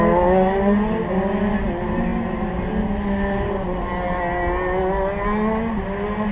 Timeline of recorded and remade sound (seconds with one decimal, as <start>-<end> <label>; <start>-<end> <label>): 0.0-6.3 recorded